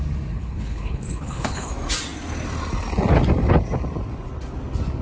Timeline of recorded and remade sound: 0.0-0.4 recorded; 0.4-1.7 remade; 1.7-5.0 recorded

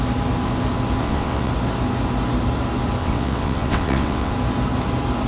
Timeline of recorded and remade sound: 0.0-1.0 recorded; 1.0-1.5 remade; 1.5-3.0 recorded; 3.0-4.3 remade; 4.3-5.3 recorded

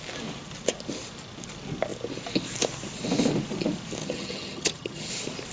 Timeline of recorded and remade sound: 0.0-4.0 recorded; 4.0-5.1 remade; 5.1-5.5 recorded